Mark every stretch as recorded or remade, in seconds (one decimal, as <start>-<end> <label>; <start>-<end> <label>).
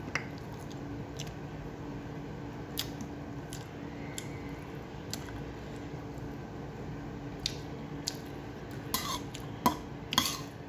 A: 0.0-10.7 recorded